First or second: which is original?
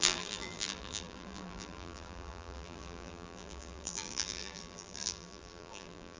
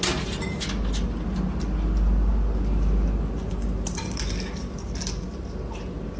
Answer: second